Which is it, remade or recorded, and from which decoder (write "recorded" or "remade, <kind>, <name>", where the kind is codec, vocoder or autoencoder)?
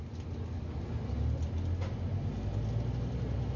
recorded